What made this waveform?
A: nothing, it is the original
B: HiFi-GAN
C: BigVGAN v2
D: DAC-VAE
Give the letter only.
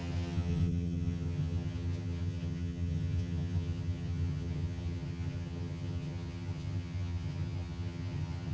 B